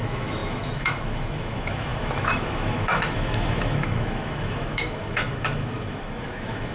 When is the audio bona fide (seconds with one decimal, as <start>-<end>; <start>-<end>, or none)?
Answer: none